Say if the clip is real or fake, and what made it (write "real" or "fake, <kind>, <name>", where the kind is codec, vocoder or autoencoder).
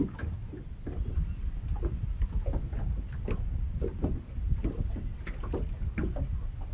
real